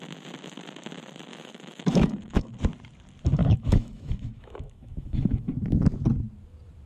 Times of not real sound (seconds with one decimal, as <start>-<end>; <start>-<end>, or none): 1.3-2.5; 3.4-5.5